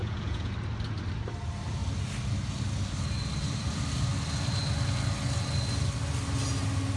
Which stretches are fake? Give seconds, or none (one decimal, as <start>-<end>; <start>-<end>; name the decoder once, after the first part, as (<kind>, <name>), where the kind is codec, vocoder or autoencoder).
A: 0.0-0.5 (vocoder, Vocos)